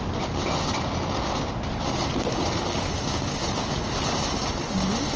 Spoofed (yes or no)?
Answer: no